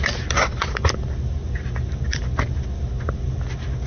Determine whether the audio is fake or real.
real